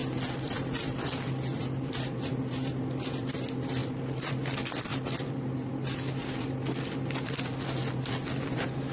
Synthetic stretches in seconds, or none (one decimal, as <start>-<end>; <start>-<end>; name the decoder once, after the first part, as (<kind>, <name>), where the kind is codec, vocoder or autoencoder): 3.8-4.3 (vocoder, BigVGAN v2)